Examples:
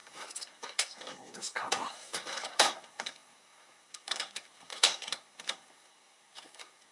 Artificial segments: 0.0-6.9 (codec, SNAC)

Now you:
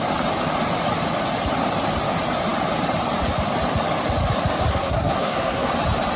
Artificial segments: 4.7-5.7 (codec, SNAC)

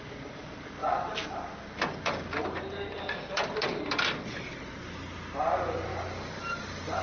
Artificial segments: 0.8-3.8 (vocoder, BigVGAN v2); 5.9-7.0